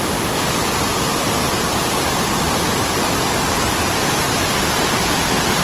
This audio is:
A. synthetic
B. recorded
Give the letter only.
B